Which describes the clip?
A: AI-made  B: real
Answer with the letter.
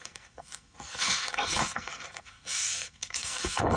A